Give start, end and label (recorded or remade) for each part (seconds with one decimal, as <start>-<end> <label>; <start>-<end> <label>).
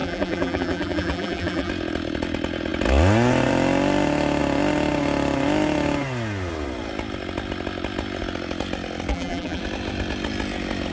0.0-1.7 remade; 1.7-9.1 recorded; 9.1-9.6 remade; 9.6-10.9 recorded